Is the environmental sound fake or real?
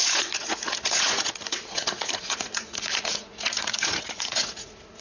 fake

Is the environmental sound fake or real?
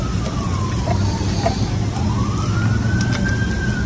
real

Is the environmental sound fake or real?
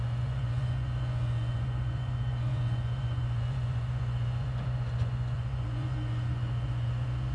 fake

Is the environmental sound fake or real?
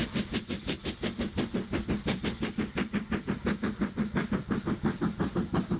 real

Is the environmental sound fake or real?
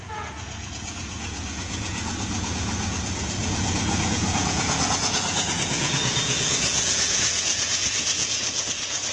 fake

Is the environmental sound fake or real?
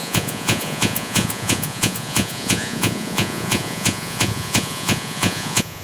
fake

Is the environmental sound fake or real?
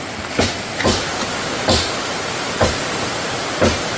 real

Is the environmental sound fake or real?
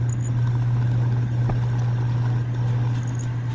real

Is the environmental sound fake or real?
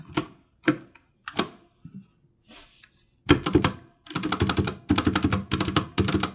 real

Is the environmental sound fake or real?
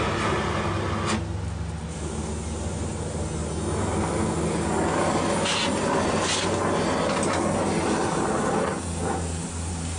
real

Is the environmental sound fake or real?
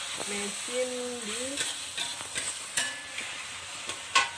real